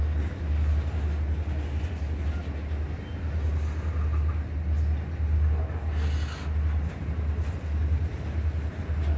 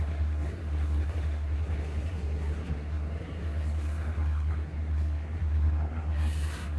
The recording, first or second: first